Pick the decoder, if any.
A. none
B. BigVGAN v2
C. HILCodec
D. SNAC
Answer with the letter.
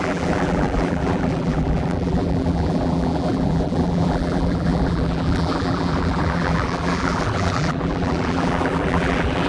B